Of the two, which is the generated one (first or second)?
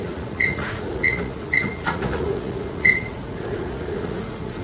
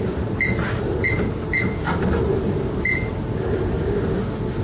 first